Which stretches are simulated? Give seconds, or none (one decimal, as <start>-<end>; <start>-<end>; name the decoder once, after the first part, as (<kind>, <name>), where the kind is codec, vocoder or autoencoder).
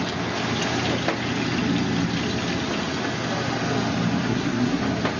4.2-4.8 (codec, SNAC)